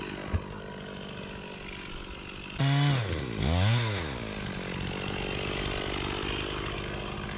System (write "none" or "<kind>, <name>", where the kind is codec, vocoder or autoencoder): none